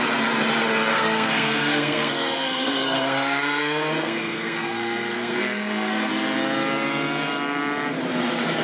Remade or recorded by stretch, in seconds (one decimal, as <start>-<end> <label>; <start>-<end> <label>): 0.0-0.9 recorded; 0.9-6.1 remade; 6.1-8.6 recorded